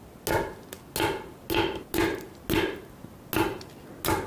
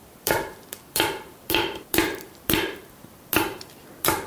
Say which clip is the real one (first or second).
first